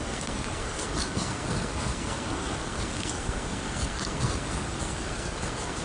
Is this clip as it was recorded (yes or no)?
no